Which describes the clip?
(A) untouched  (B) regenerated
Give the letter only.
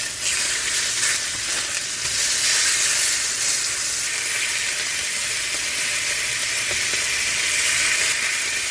A